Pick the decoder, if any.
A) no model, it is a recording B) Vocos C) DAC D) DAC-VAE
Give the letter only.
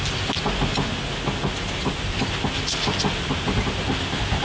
A